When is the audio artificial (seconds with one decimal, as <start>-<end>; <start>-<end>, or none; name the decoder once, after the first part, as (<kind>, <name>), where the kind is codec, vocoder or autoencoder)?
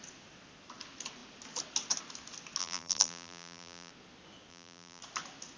2.6-3.9 (vocoder, BigVGAN v2); 4.5-5.0